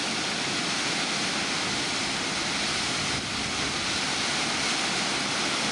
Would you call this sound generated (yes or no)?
no